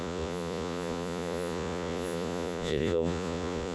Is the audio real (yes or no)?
no